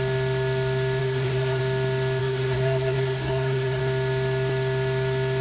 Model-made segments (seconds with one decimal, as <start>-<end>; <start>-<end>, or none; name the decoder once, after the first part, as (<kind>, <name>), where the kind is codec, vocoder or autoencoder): 1.0-1.6 (codec, SNAC); 2.2-3.8